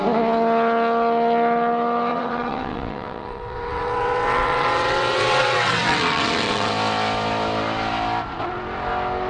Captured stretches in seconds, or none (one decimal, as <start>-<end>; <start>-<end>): 0.0-2.1; 6.7-9.3